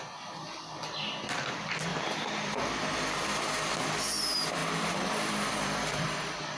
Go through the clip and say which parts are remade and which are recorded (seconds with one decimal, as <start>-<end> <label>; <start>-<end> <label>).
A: 0.0-1.9 recorded; 1.9-3.8 remade; 3.8-4.6 recorded; 4.6-6.6 remade